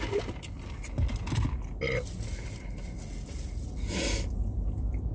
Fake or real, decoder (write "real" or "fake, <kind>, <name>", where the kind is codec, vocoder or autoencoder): real